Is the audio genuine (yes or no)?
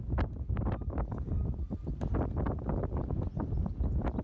yes